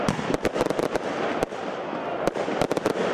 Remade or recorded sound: recorded